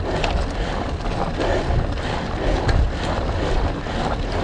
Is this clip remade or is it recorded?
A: recorded